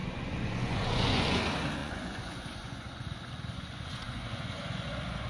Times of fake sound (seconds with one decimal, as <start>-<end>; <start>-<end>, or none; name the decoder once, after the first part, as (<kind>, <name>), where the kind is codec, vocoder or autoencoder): 0.0-1.4 (vocoder, Vocos); 1.8-5.3